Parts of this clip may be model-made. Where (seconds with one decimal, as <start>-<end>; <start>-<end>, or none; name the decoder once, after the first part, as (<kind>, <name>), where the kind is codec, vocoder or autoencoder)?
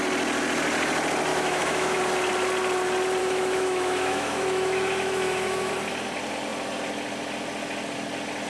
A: 1.3-2.0 (autoencoder, DAC-VAE); 3.2-5.7